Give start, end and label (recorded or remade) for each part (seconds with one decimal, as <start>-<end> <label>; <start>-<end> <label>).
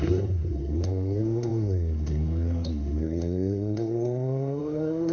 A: 0.0-5.1 remade